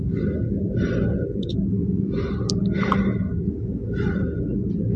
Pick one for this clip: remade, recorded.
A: recorded